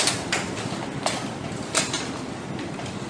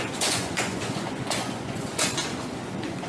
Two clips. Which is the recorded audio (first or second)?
first